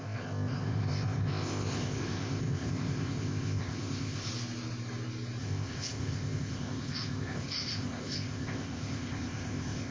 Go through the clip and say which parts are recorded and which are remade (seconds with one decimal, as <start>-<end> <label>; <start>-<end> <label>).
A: 0.0-4.3 remade; 4.3-5.4 recorded; 5.4-9.9 remade